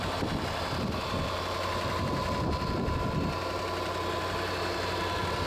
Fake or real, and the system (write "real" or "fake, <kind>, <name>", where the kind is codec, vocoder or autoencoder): real